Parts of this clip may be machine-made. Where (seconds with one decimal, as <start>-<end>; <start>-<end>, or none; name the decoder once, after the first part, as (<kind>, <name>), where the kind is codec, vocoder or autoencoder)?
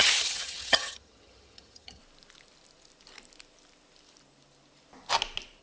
0.0-2.0 (vocoder, HiFi-GAN)